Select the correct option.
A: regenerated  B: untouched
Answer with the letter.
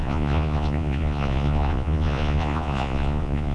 A